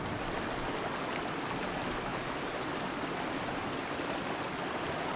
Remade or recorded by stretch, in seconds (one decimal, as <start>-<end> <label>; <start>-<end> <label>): 0.0-5.2 recorded